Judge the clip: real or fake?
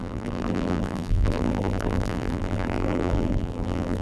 fake